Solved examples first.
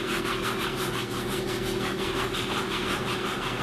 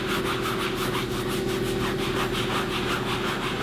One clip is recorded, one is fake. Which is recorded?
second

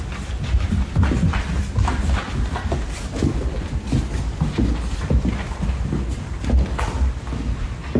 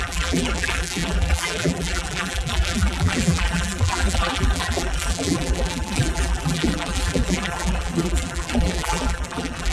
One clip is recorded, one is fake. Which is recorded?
first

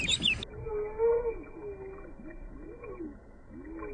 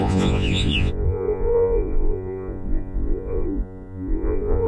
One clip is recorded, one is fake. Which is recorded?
first